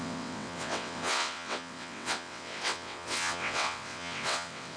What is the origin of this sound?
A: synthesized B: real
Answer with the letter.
A